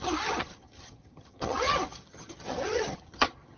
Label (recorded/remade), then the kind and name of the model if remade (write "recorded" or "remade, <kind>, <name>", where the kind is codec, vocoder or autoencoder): remade, vocoder, HiFi-GAN